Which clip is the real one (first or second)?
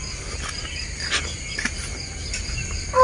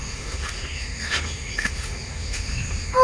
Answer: first